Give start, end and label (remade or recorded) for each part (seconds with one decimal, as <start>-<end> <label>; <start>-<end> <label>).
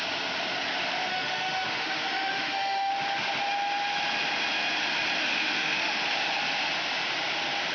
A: 0.0-1.1 recorded; 1.1-2.9 remade; 2.9-5.2 recorded; 5.2-6.0 remade; 6.0-7.7 recorded